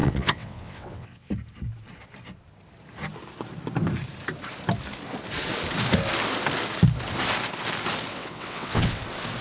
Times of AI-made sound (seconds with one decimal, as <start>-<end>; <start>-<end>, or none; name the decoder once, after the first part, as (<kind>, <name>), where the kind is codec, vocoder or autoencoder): 0.0-1.3 (vocoder, WaveNeXt); 8.1-9.0